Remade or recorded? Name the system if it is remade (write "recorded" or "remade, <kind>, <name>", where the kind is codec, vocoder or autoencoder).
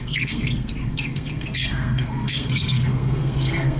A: remade, codec, SNAC